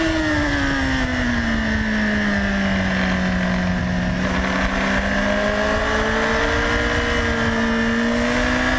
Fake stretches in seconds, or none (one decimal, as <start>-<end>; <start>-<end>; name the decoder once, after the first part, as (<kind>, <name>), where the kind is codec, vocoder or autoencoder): none